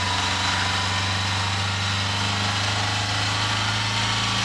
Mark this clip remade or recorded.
recorded